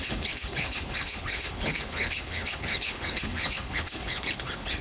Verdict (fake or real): fake